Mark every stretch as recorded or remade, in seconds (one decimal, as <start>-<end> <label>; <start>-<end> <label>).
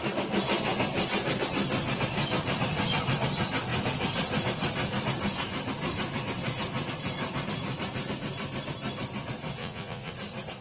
0.0-9.6 recorded; 9.6-10.1 remade; 10.1-10.6 recorded